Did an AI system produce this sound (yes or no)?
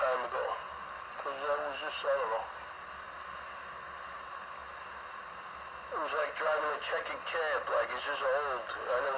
no